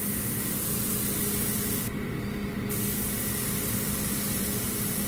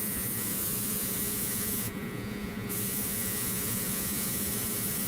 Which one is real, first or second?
first